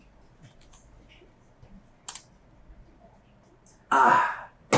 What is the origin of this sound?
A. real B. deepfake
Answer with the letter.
A